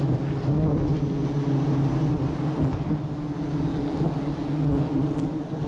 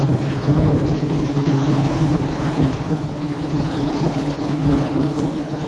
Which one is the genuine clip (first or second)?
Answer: first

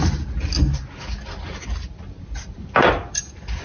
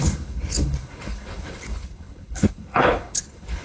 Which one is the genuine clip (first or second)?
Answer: first